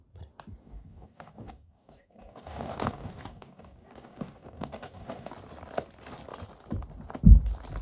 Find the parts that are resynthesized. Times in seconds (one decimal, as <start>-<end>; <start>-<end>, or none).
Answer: 0.6-5.3